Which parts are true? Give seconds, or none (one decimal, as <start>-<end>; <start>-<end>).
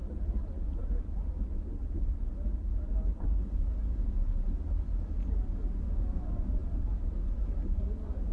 0.0-8.3